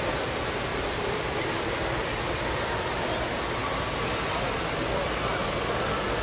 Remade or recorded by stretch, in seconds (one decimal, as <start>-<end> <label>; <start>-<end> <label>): 0.0-0.7 recorded; 0.7-2.1 remade; 2.1-6.2 recorded